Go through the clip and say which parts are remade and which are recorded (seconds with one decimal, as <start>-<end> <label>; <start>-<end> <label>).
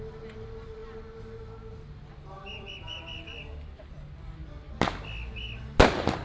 0.0-6.2 recorded